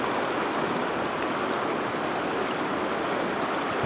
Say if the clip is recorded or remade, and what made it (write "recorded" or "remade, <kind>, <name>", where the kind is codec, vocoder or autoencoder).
recorded